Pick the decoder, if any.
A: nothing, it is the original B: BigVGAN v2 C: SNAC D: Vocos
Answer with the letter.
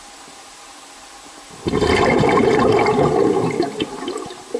B